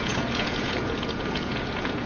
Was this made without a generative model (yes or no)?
no